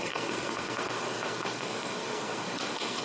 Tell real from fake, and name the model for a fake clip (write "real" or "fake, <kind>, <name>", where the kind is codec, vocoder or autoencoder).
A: fake, codec, SNAC